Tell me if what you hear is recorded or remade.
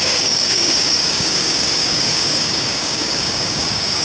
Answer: remade